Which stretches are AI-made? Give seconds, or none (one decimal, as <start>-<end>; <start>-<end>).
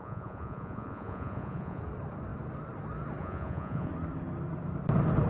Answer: 0.0-1.8; 3.2-3.9